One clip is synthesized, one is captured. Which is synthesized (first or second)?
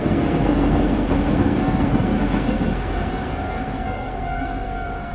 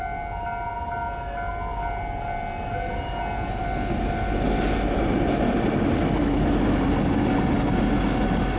first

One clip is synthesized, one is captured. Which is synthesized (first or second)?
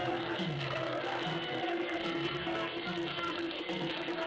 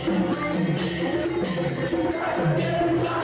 first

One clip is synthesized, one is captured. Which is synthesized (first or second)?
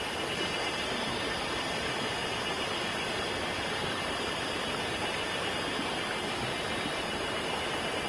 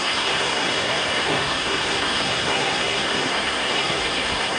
second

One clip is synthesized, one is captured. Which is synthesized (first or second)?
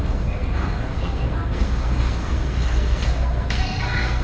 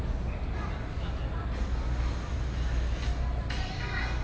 first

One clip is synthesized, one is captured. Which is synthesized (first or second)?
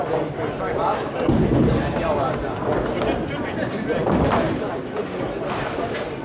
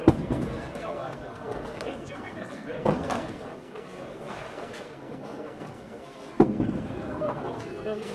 second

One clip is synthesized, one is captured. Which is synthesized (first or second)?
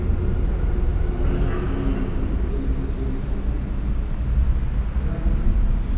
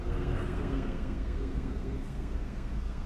second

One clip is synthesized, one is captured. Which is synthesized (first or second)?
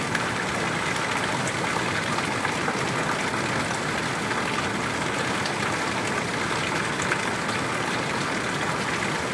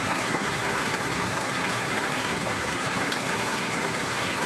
second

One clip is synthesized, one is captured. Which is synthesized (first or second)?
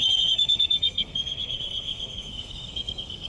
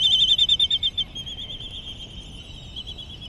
first